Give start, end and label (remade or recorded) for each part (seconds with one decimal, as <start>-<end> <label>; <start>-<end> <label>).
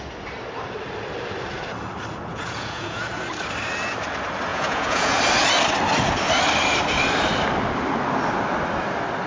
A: 0.0-2.3 recorded; 2.3-3.0 remade; 3.0-4.5 recorded; 4.5-5.2 remade; 5.2-9.3 recorded